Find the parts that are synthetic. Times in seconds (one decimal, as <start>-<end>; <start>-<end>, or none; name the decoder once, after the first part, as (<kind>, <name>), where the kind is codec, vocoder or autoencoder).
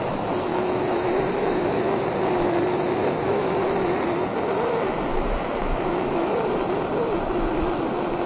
0.5-2.0 (autoencoder, DAC-VAE); 3.0-3.8; 5.1-6.3